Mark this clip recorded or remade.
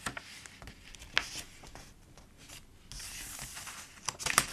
recorded